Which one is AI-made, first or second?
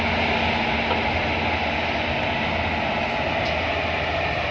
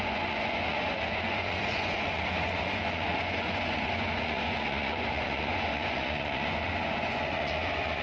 second